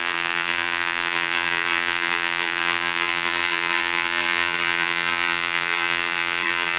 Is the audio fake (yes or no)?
yes